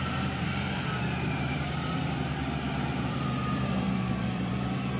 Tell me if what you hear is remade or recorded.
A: remade